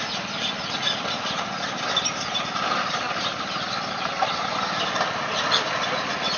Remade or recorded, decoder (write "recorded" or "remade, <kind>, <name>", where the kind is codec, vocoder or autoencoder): recorded